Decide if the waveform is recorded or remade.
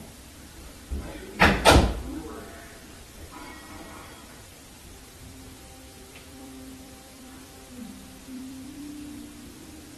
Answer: remade